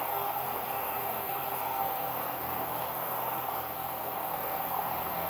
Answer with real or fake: fake